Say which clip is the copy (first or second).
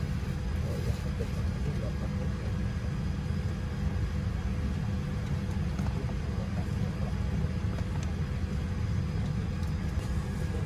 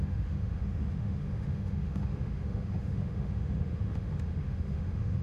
second